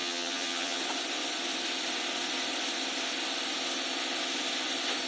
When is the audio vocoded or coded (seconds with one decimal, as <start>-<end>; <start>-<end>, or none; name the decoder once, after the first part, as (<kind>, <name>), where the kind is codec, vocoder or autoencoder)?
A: 0.0-0.8 (vocoder, HiFi-GAN)